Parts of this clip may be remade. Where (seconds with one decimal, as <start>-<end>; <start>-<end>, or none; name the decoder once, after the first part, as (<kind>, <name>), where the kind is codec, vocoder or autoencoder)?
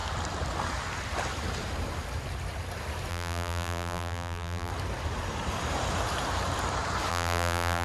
3.1-4.7 (vocoder, BigVGAN v2); 7.1-7.8